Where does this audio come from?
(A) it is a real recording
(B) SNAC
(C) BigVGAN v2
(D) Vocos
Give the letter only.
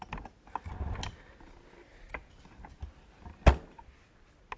A